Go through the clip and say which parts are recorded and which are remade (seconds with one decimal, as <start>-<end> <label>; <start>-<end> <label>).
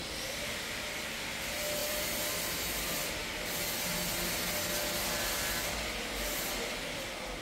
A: 0.0-1.2 remade; 1.2-1.8 recorded; 1.8-2.4 remade; 2.4-7.4 recorded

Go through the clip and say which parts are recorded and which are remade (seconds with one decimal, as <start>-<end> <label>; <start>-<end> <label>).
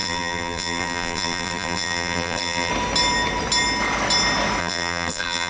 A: 0.0-2.7 remade; 2.7-4.6 recorded; 4.6-5.5 remade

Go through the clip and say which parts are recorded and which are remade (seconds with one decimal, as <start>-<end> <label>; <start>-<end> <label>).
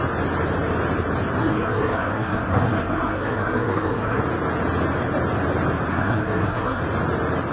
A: 0.0-1.4 recorded; 1.4-4.2 remade; 4.2-5.9 recorded; 5.9-6.8 remade; 6.8-7.5 recorded